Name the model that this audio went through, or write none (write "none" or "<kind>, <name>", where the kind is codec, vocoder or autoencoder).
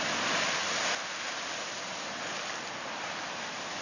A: none